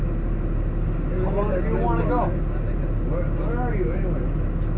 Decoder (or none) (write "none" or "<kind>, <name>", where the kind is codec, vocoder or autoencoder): none